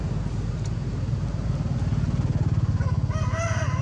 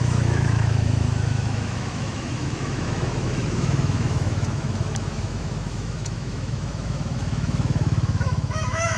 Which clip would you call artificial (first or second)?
second